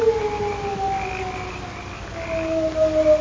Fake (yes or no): no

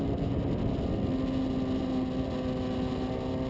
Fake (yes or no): no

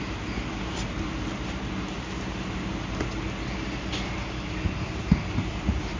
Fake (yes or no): no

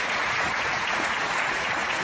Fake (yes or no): yes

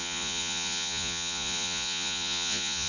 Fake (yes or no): yes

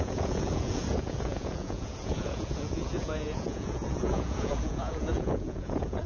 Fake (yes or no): yes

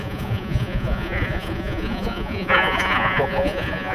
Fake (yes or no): yes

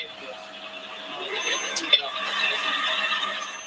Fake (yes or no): no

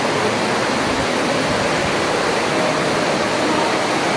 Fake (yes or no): no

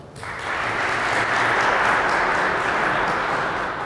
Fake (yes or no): no